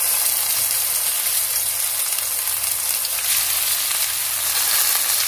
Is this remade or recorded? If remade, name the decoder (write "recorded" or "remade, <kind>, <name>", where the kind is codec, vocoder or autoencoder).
recorded